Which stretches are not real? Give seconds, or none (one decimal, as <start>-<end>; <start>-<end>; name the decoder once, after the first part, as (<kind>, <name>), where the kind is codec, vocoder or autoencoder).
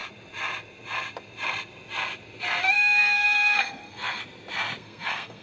2.6-4.2 (codec, SNAC); 4.8-5.4